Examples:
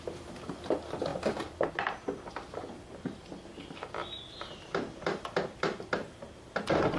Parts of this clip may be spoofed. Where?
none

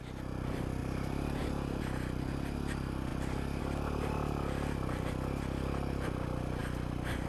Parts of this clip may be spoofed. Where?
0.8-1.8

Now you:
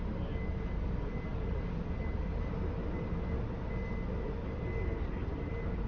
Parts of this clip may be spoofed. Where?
5.2-5.9

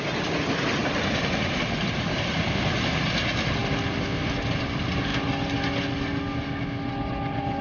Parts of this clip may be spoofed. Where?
none

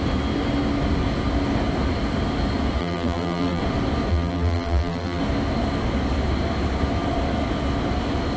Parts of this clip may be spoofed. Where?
2.8-3.6; 4.1-5.2

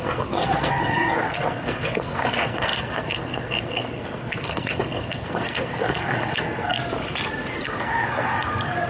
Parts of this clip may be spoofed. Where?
0.0-6.8; 7.6-8.9

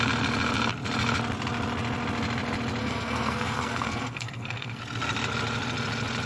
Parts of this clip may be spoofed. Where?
2.8-4.8